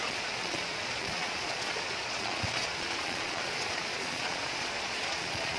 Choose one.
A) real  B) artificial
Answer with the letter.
B